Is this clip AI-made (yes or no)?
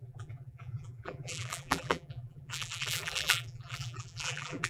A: yes